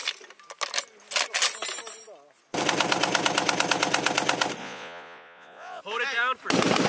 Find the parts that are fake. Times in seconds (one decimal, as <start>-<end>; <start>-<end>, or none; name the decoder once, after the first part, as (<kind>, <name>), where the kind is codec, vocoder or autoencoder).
4.6-5.8 (vocoder, Vocos)